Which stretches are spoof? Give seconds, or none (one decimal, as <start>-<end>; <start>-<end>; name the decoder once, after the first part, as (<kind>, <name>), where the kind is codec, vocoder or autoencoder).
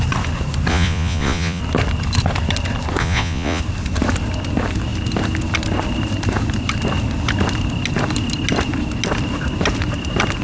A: 0.7-1.6 (vocoder, Vocos); 3.0-3.6